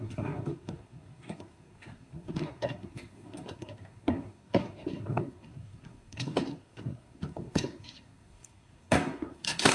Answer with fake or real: fake